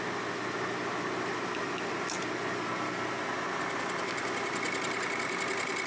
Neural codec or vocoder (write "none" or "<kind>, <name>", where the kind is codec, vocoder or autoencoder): none